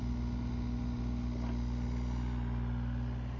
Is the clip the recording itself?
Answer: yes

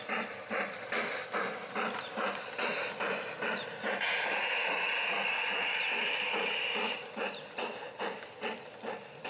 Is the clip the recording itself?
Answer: yes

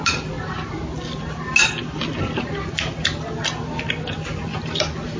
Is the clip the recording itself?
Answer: yes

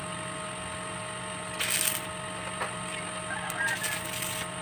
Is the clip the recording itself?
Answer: yes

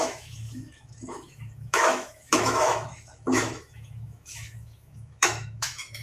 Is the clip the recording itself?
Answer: no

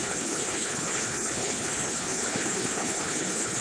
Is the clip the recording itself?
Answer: no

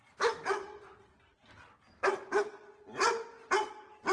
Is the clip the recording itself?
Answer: yes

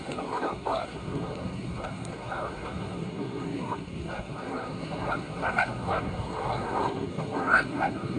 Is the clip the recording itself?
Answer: no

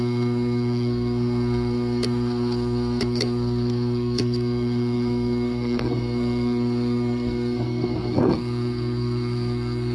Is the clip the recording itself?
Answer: no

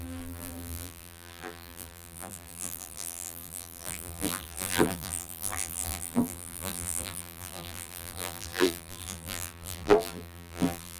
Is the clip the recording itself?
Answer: no